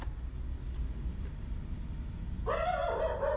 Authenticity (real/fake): real